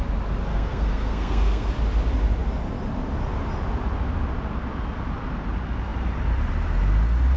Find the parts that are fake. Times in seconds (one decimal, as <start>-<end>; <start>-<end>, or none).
0.5-1.7